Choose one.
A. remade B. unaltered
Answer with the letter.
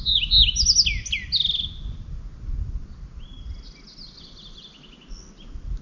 B